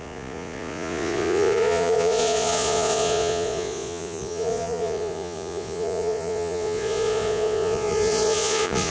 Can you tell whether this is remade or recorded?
remade